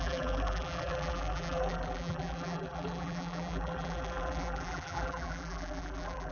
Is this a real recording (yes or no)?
no